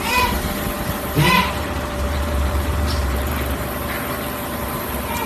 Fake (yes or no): yes